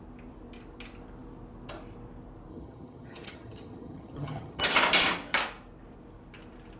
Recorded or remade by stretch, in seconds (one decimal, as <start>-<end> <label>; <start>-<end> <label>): 0.0-2.5 recorded; 2.5-4.6 remade; 4.6-6.8 recorded